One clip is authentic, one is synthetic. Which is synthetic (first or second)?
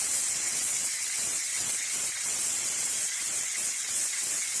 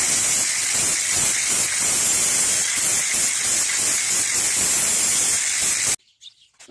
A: first